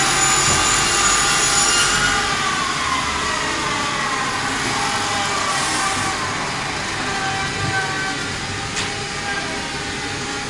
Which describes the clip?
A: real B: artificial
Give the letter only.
A